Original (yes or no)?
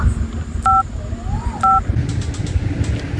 yes